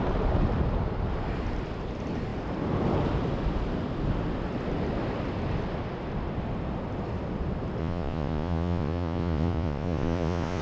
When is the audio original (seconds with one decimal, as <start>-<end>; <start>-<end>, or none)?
0.0-7.8